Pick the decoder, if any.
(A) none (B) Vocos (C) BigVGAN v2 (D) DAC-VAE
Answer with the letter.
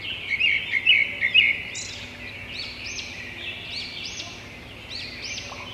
A